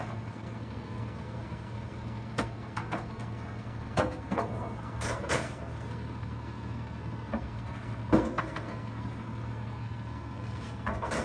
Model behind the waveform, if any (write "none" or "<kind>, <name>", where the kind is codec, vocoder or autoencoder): codec, SNAC